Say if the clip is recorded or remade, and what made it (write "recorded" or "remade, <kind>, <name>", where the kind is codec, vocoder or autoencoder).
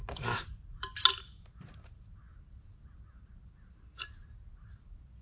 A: recorded